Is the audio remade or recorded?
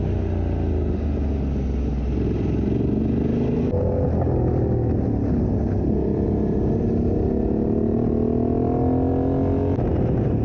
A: recorded